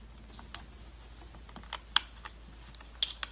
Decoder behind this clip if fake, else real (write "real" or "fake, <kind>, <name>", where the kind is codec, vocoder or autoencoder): real